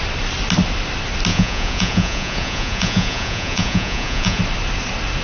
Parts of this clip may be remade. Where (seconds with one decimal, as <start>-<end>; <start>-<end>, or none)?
1.3-4.4